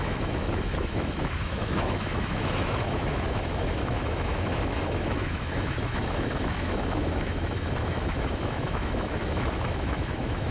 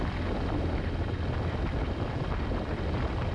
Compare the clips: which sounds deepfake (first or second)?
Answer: first